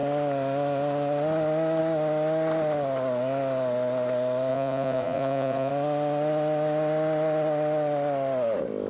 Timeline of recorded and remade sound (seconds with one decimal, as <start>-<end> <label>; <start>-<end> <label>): 0.0-4.5 recorded; 4.5-5.7 remade; 5.7-8.9 recorded